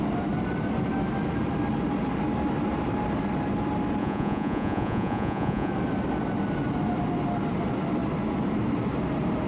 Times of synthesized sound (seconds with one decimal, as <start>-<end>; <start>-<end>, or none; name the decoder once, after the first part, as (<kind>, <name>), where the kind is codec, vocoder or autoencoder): 4.0-5.7 (vocoder, Vocos)